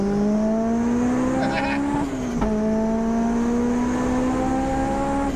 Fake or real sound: real